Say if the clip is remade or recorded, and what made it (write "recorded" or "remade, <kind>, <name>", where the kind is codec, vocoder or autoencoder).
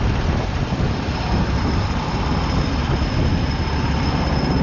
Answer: recorded